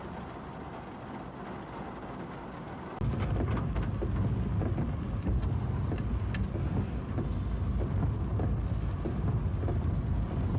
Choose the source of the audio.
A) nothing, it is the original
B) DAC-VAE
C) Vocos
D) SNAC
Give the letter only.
A